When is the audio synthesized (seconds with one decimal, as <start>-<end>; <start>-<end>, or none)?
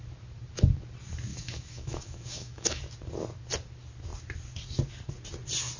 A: 1.3-2.8